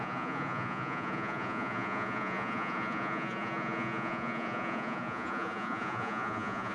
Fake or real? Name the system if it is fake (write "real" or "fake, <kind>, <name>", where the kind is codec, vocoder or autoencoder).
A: fake, vocoder, Vocos